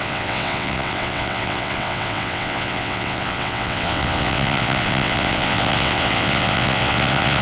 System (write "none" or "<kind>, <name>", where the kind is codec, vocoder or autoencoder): vocoder, WaveNeXt